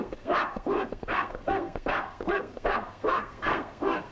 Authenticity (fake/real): fake